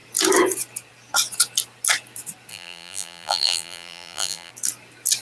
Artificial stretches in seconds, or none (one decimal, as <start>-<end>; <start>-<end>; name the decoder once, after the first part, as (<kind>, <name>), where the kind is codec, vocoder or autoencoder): 2.5-4.5 (vocoder, BigVGAN v2)